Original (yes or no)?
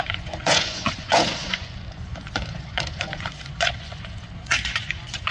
no